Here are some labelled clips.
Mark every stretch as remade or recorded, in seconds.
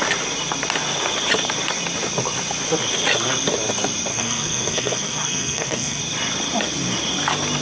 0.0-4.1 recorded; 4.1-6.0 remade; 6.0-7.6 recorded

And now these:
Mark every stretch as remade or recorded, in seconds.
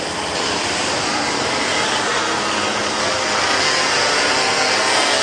0.0-5.2 recorded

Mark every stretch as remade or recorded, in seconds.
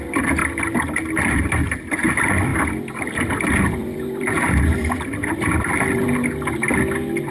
0.0-2.5 recorded; 2.5-3.3 remade; 3.3-3.8 recorded; 3.8-5.7 remade; 5.7-7.3 recorded